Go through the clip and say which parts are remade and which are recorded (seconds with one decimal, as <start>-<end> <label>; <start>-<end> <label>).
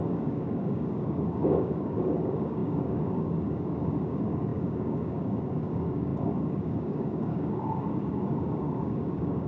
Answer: 0.0-9.5 remade